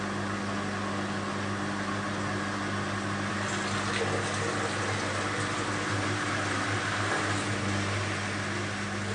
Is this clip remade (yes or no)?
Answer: no